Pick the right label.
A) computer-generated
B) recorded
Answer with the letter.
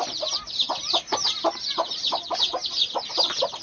A